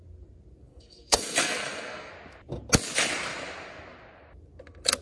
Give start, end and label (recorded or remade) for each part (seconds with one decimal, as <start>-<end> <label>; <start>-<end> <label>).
0.0-0.7 recorded; 0.7-2.1 remade; 2.1-5.0 recorded